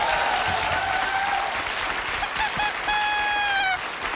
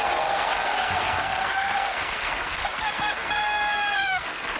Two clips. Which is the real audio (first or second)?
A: first